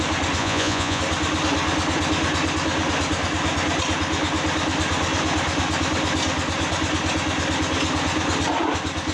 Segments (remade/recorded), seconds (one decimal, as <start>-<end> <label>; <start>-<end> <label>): 0.0-0.4 recorded; 0.4-1.0 remade; 1.0-9.1 recorded